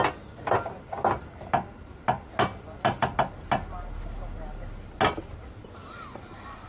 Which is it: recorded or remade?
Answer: recorded